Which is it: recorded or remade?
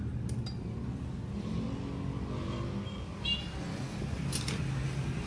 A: recorded